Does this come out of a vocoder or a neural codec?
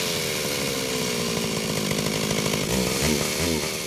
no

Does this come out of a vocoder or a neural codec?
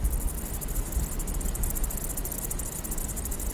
no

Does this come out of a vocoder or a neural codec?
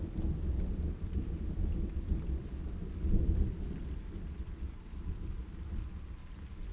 no